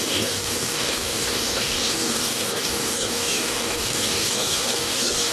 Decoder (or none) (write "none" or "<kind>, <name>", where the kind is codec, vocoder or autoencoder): codec, DAC